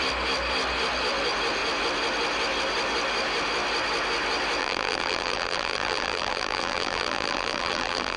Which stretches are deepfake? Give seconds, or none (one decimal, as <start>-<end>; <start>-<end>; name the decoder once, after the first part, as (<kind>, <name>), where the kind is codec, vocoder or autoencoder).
4.6-8.2 (vocoder, BigVGAN v2)